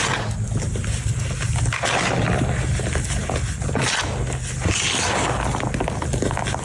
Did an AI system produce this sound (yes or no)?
no